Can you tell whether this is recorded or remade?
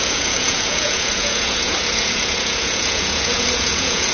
remade